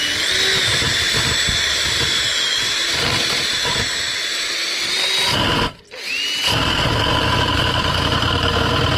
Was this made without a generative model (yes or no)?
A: yes